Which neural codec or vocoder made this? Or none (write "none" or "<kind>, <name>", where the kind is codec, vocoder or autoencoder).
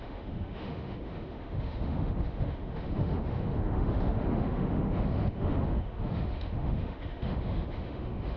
autoencoder, DAC-VAE